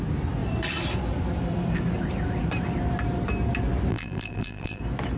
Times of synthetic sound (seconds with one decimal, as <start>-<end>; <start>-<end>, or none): 3.9-4.8